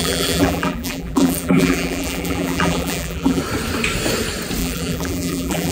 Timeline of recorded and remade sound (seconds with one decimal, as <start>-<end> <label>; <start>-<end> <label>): 0.0-3.4 remade; 3.4-4.6 recorded; 4.6-5.7 remade